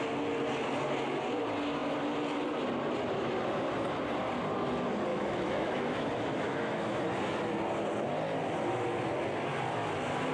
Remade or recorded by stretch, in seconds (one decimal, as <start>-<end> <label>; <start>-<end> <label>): 0.0-5.1 recorded; 5.1-7.0 remade; 7.0-10.3 recorded